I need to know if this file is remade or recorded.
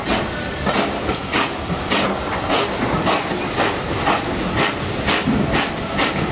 recorded